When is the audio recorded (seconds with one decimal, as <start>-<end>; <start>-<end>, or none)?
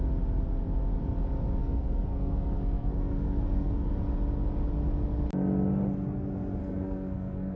0.0-1.6; 3.9-6.6